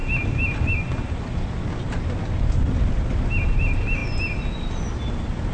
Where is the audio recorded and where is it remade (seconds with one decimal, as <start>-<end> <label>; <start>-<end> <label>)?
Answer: 0.0-5.5 recorded